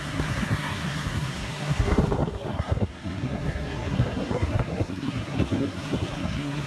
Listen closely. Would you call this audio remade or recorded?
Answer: remade